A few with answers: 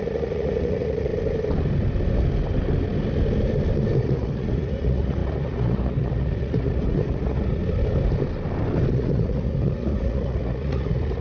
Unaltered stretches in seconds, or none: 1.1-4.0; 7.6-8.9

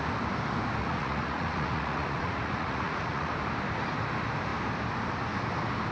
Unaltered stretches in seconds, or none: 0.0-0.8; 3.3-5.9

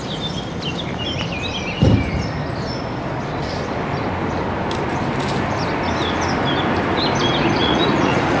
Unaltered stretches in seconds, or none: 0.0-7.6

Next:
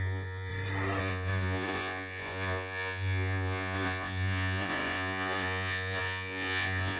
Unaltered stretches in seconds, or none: 0.5-1.0

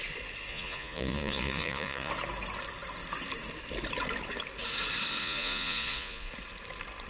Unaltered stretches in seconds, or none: 0.0-0.5; 2.1-5.2; 6.3-7.1